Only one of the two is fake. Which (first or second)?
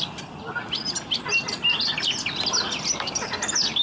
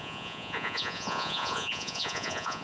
second